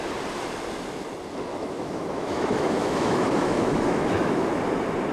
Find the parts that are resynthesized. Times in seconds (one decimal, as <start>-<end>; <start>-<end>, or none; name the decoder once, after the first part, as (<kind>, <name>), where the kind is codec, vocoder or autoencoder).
1.5-4.6 (autoencoder, DAC-VAE)